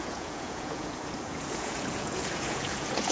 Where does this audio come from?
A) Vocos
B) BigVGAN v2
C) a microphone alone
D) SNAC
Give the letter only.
A